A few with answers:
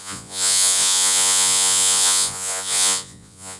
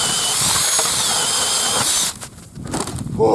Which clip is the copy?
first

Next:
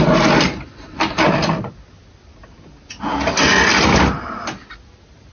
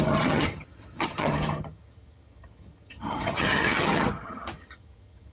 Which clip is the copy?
second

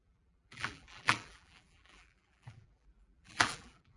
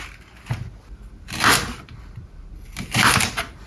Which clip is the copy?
first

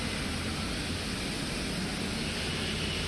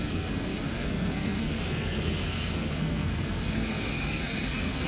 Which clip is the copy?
second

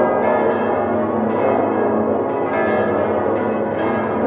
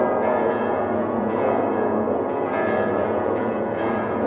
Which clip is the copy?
second